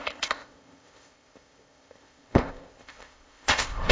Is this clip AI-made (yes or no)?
yes